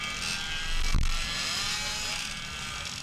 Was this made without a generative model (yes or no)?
yes